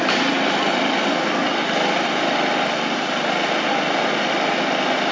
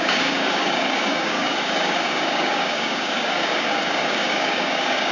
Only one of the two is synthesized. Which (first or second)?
second